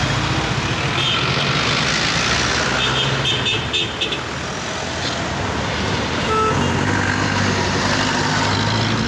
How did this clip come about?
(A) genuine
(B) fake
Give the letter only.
A